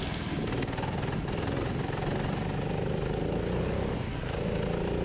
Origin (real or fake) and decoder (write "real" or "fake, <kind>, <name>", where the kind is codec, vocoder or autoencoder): real